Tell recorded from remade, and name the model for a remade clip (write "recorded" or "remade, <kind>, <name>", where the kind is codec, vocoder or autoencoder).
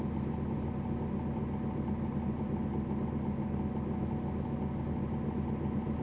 recorded